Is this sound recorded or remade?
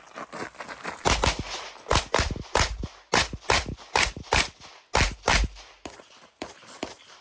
recorded